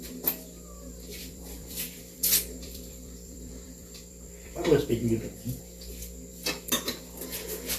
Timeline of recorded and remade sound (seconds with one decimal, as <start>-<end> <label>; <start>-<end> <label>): 0.0-1.2 recorded; 1.2-5.6 remade; 5.6-7.8 recorded